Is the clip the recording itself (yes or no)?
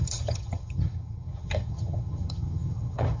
no